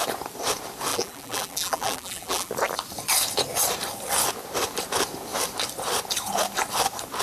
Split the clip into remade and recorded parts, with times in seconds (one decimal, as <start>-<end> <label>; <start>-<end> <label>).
0.0-0.9 recorded; 0.9-2.5 remade; 2.5-7.2 recorded